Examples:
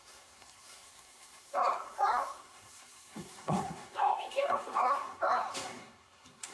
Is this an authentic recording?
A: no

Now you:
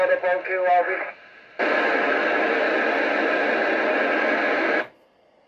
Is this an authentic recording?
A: yes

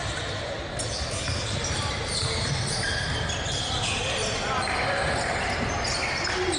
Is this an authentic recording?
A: yes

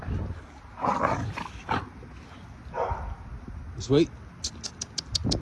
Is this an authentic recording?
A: yes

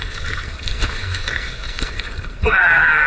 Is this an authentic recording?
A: no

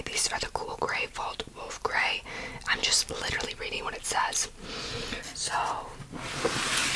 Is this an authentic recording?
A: yes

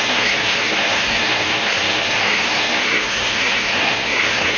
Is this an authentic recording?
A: no